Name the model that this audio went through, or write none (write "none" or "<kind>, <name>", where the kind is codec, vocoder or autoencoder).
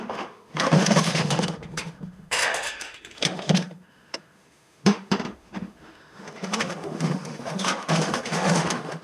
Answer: autoencoder, DAC-VAE